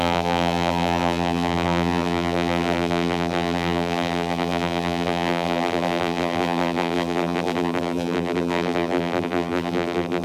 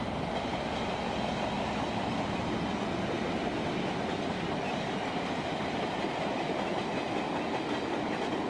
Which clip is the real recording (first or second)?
second